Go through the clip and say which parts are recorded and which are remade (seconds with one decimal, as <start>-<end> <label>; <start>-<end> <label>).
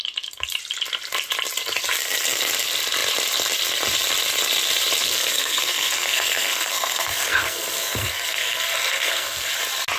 0.0-5.0 recorded; 5.0-9.5 remade; 9.5-10.0 recorded